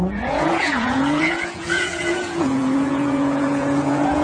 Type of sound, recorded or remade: remade